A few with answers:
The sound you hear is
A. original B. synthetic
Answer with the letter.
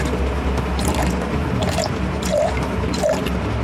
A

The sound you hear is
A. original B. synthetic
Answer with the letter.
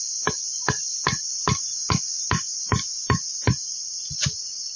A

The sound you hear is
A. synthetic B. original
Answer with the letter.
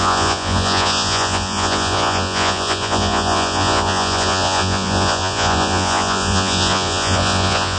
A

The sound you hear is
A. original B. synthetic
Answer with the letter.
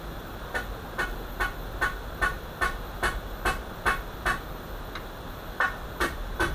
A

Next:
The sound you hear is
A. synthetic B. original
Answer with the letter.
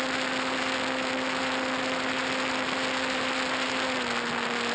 B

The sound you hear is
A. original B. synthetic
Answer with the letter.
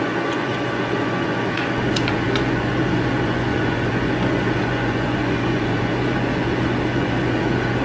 B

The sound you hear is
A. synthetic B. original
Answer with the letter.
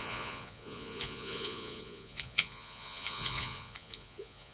A